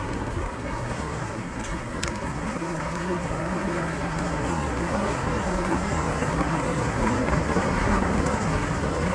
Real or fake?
fake